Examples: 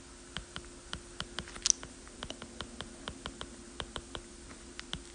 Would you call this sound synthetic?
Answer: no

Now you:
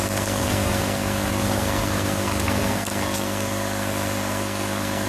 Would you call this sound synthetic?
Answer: yes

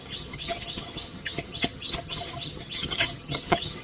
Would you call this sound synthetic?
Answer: yes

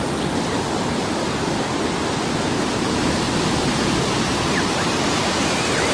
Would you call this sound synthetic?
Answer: no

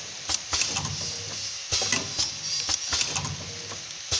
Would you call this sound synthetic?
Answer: no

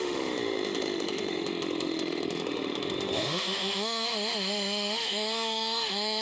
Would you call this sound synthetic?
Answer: yes